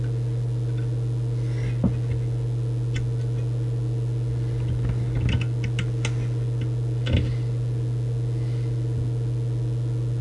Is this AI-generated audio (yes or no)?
no